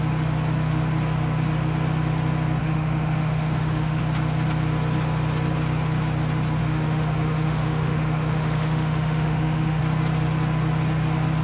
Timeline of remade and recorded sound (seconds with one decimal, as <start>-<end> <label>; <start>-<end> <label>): 0.0-2.6 recorded; 2.6-4.0 remade; 4.0-6.6 recorded; 6.6-9.8 remade; 9.8-11.4 recorded